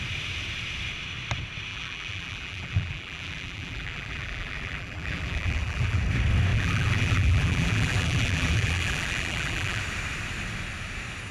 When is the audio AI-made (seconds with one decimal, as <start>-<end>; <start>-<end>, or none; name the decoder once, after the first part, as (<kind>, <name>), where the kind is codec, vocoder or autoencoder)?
1.7-6.0 (vocoder, BigVGAN v2); 6.5-9.8